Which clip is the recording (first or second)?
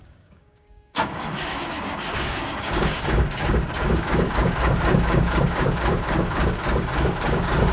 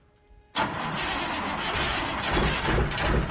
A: second